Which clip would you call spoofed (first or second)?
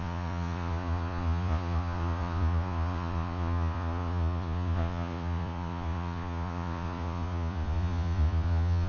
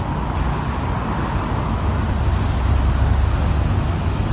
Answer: first